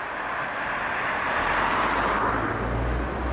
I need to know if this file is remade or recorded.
recorded